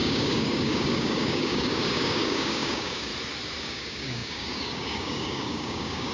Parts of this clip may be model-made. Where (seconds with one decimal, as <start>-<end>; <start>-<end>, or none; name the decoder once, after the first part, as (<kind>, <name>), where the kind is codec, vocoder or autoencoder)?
0.0-3.1 (codec, DAC); 3.6-6.1